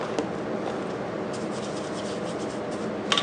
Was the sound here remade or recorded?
recorded